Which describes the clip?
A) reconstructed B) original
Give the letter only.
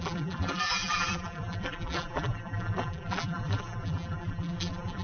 A